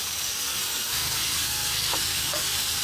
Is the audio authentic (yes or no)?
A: no